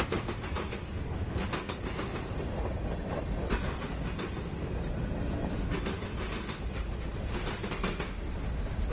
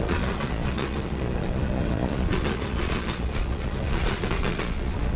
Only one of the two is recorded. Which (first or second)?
first